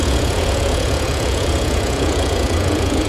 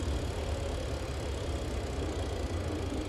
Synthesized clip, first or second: first